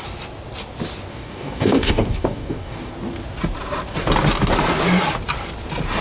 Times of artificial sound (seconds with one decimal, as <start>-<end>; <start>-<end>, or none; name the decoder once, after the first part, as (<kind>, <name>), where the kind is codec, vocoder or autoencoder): 1.1-2.9 (codec, DAC)